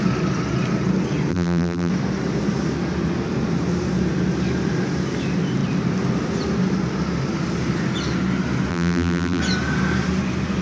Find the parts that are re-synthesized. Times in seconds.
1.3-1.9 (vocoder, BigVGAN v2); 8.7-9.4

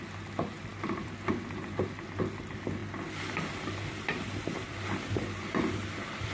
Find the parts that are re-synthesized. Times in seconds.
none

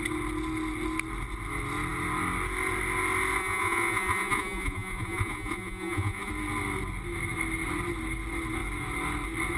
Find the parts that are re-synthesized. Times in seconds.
3.4-6.3 (vocoder, Vocos)